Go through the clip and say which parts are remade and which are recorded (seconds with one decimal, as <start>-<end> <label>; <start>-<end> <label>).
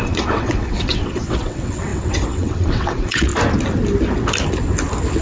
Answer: 0.0-3.3 remade; 3.3-5.2 recorded